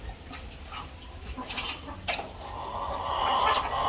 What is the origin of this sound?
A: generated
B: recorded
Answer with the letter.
B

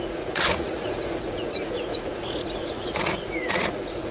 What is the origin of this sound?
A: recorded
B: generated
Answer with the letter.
B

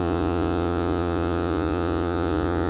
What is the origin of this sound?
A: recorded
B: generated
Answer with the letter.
B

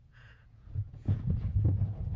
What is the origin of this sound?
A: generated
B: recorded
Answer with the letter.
A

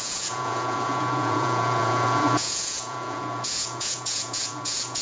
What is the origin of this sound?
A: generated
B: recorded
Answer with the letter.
A